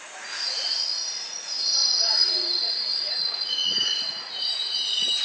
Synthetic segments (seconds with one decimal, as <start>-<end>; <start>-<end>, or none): 0.0-5.2